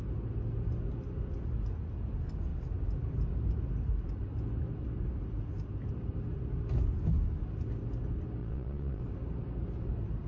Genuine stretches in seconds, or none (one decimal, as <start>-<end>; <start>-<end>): 0.0-8.4; 9.0-10.3